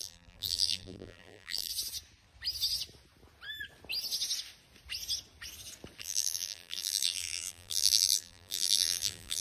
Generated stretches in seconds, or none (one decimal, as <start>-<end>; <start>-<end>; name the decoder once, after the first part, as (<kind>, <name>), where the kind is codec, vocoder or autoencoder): 0.0-1.7 (vocoder, BigVGAN v2); 6.0-9.4